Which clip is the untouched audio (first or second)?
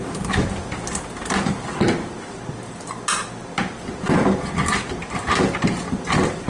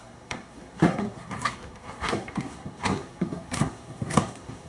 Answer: first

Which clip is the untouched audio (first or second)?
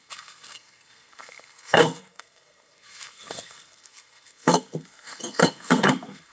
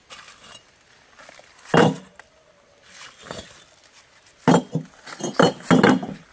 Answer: second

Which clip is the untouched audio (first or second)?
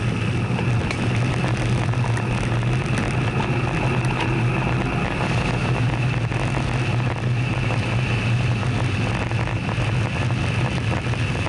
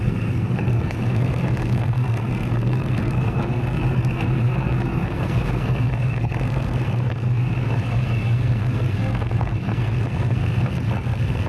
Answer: first